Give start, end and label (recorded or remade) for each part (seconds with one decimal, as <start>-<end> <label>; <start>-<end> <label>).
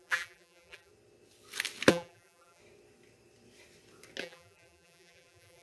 0.0-0.9 remade; 0.9-1.9 recorded; 1.9-2.6 remade; 2.6-4.2 recorded; 4.2-5.6 remade